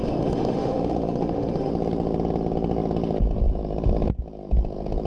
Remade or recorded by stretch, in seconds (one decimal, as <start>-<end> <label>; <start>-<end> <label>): 0.0-1.7 remade; 1.7-5.1 recorded

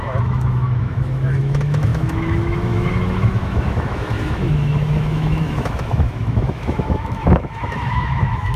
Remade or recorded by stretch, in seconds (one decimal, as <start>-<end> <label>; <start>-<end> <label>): 0.0-8.6 remade

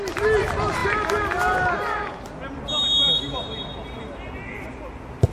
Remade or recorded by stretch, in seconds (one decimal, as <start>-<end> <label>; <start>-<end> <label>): 0.0-5.3 recorded

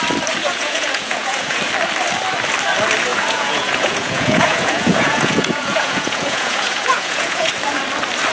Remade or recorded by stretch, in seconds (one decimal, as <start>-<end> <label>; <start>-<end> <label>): 0.0-0.4 recorded; 0.4-1.6 remade; 1.6-3.1 recorded; 3.1-7.5 remade; 7.5-8.3 recorded

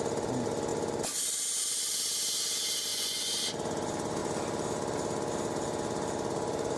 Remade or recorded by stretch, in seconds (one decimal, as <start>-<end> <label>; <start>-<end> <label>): 0.0-2.9 recorded; 2.9-3.4 remade; 3.4-6.8 recorded

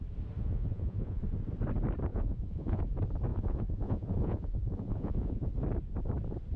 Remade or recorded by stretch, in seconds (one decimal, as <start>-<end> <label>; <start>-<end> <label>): 0.0-0.4 recorded; 0.4-1.2 remade; 1.2-2.1 recorded; 2.1-2.8 remade; 2.8-3.3 recorded; 3.3-5.5 remade; 5.5-6.6 recorded